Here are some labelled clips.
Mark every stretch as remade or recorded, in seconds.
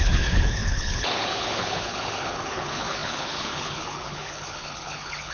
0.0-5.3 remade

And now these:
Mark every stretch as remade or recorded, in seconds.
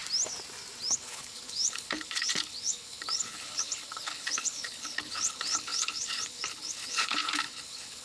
0.0-0.9 recorded; 0.9-8.0 remade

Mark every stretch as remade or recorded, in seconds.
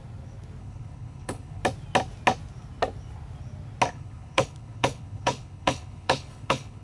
0.0-0.6 recorded; 0.6-1.6 remade; 1.6-3.9 recorded; 3.9-6.8 remade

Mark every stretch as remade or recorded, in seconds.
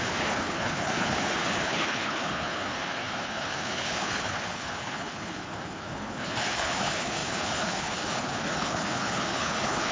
0.0-9.9 remade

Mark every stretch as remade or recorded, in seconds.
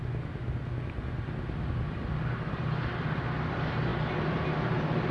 0.0-5.1 recorded